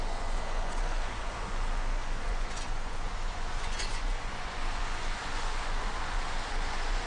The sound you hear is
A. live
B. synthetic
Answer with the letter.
B